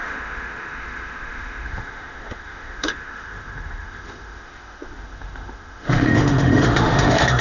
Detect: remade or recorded remade